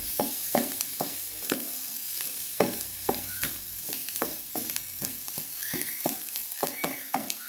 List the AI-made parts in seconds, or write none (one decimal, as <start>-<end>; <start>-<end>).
0.0-7.5